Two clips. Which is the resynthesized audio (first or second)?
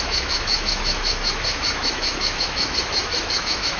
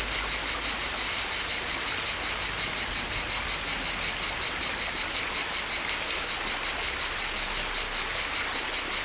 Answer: first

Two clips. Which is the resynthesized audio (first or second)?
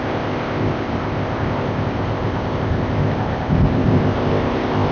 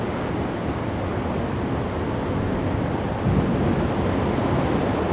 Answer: first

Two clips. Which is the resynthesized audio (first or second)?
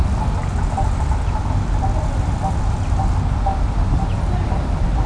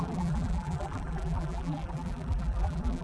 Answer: second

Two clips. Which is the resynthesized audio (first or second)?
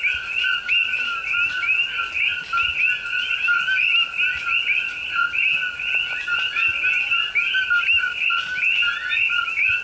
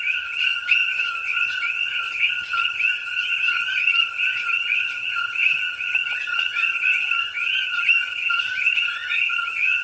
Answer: second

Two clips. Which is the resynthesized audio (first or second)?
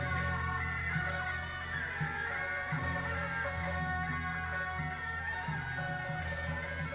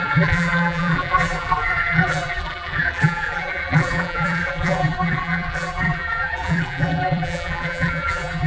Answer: second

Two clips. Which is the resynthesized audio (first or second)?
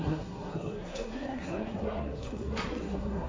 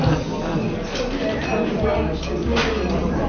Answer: first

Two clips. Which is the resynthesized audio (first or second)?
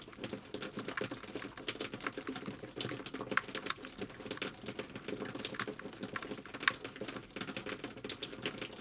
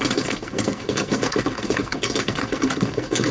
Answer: second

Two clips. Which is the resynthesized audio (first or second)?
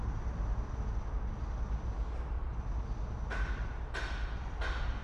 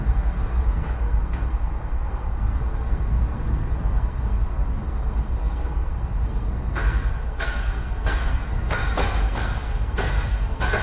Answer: second